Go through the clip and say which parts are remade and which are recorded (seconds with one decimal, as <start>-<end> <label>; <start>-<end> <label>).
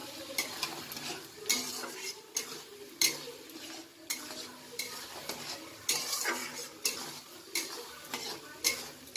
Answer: 0.0-9.2 recorded